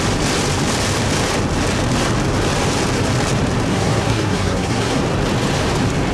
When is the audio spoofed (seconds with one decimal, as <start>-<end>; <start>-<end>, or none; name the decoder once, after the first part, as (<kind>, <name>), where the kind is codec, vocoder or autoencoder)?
3.7-5.0 (codec, SNAC)